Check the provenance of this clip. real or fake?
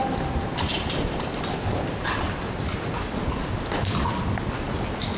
real